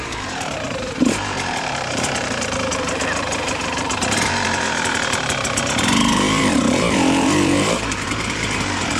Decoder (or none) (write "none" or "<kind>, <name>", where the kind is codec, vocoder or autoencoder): vocoder, BigVGAN v2